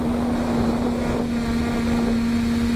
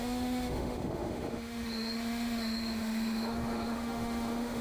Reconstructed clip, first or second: second